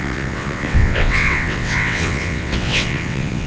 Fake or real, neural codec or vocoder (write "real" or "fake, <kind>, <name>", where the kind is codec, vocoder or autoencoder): fake, vocoder, WaveNeXt